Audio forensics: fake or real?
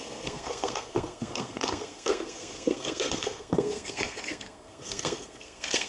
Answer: fake